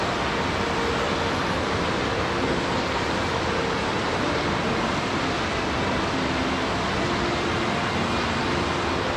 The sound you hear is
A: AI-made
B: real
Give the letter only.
B